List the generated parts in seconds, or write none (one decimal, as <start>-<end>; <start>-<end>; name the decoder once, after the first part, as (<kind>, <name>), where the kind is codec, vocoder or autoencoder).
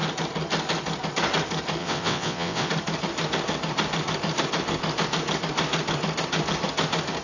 1.8-2.7 (vocoder, WaveNeXt)